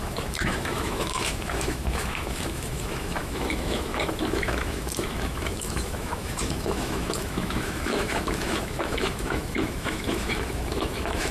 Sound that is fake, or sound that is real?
fake